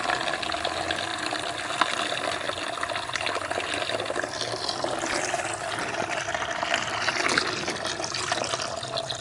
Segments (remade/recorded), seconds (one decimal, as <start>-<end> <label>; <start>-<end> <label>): 0.0-9.2 recorded